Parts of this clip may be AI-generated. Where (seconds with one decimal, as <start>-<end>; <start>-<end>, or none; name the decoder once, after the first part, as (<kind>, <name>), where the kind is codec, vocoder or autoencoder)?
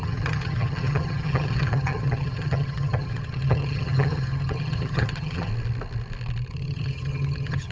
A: 0.0-5.5 (vocoder, HiFi-GAN); 6.5-7.7